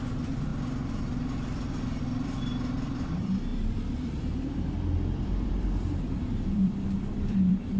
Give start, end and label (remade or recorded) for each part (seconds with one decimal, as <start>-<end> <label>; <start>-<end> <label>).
0.0-7.8 remade